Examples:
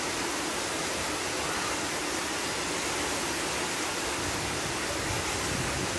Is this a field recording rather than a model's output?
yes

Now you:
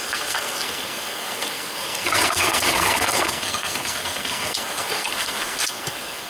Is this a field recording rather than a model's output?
no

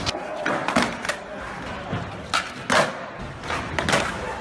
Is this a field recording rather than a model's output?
yes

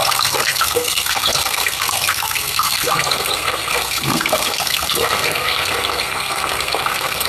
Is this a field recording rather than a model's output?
no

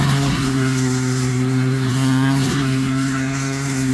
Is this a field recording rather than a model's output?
no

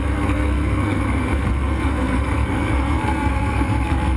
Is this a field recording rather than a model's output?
no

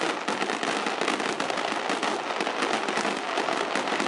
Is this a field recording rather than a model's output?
yes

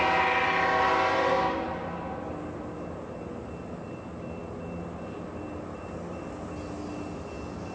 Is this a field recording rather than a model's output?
yes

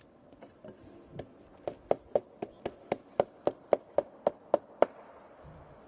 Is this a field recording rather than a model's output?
yes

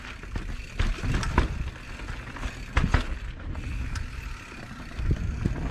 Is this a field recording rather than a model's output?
yes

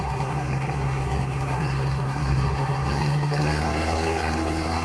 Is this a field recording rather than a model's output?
no